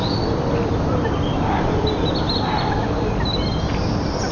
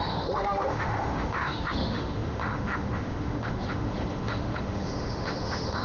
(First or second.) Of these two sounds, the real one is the first